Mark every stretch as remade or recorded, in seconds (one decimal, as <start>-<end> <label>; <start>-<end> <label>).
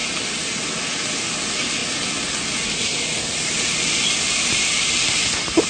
0.0-5.7 recorded